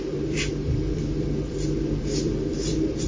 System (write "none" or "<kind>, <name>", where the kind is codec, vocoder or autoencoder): vocoder, BigVGAN v2